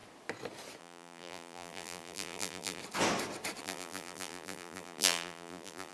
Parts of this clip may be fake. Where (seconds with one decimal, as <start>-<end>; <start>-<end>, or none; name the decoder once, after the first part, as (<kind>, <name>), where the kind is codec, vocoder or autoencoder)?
0.8-2.8 (vocoder, BigVGAN v2); 3.6-5.9